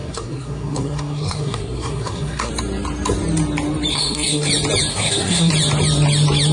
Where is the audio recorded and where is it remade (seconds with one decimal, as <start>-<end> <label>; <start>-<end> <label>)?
0.0-2.5 remade; 2.5-3.9 recorded; 3.9-4.5 remade; 4.5-4.9 recorded; 4.9-5.5 remade; 5.5-6.5 recorded